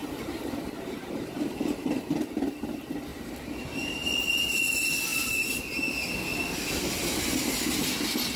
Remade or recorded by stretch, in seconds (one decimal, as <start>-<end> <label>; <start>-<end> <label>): 0.0-2.1 remade; 2.1-3.1 recorded; 3.1-4.3 remade; 4.3-8.4 recorded